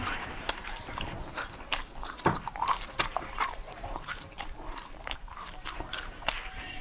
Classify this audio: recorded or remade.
remade